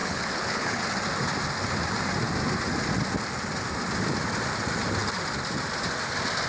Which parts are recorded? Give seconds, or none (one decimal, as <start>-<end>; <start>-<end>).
0.8-6.5